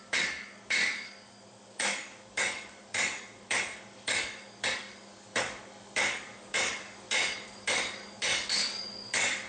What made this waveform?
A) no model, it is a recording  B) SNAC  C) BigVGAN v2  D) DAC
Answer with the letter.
D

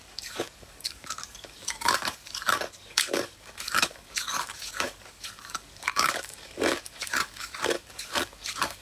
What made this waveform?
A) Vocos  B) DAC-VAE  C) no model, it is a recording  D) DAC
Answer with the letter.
D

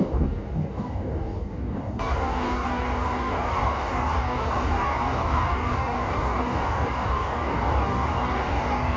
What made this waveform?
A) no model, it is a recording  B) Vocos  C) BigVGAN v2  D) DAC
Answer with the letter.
D